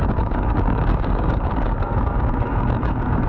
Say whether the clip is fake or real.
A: fake